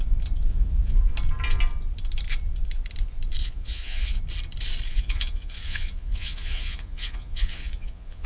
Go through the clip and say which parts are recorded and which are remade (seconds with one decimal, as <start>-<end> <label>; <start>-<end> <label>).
0.0-0.5 recorded; 0.5-1.0 remade; 1.0-3.4 recorded; 3.4-4.2 remade; 4.2-4.9 recorded; 4.9-8.3 remade